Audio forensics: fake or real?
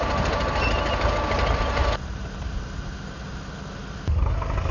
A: real